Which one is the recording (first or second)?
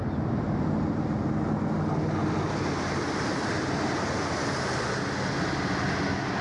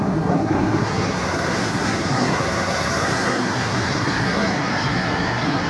first